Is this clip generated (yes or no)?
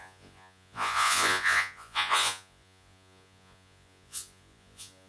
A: yes